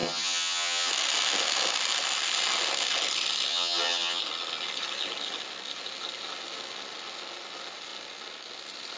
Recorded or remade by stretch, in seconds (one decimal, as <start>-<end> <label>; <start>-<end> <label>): 0.0-0.9 remade; 0.9-3.5 recorded; 3.5-4.2 remade; 4.2-9.0 recorded